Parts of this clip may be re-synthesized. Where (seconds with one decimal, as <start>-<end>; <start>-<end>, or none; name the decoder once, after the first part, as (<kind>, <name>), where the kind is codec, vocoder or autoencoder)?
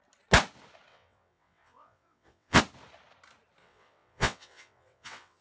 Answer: 0.9-2.6 (vocoder, WaveNeXt); 3.6-5.4